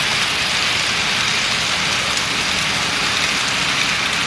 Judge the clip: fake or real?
real